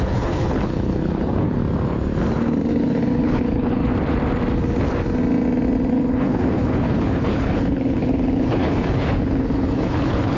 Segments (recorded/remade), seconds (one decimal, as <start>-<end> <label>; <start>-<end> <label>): 0.0-1.6 remade; 1.6-2.7 recorded; 2.7-3.9 remade; 3.9-5.9 recorded; 5.9-10.4 remade